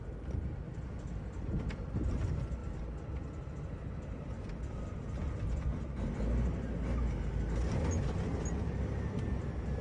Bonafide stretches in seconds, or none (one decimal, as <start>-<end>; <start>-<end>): 0.0-9.8